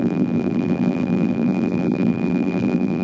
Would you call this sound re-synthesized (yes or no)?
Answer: yes